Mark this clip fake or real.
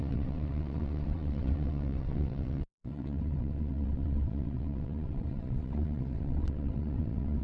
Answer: fake